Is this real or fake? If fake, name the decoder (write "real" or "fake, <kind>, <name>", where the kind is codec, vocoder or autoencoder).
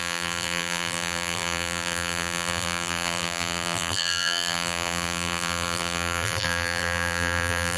fake, vocoder, BigVGAN v2